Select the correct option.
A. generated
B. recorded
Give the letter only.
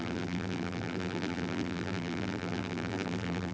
A